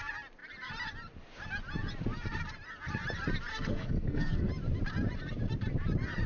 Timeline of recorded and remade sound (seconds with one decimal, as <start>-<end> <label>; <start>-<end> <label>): 0.0-3.5 recorded; 3.5-4.5 remade; 4.5-6.3 recorded